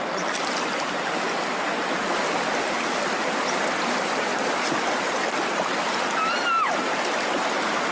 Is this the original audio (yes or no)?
yes